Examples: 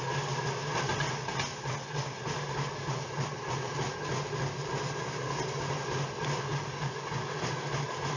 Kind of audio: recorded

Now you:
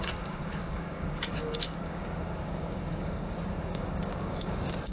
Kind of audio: remade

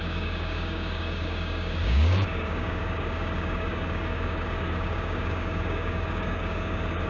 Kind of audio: remade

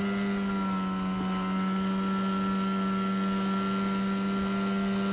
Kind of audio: recorded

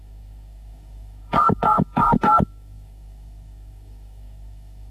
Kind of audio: remade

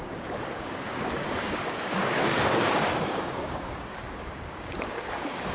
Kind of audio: remade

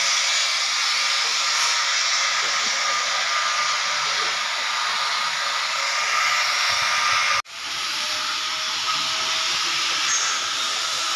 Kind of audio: recorded